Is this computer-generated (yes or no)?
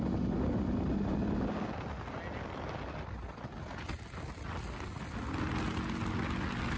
no